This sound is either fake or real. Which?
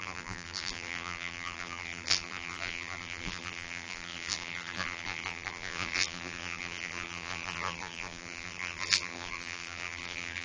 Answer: fake